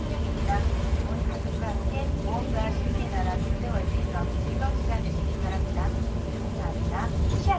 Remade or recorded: recorded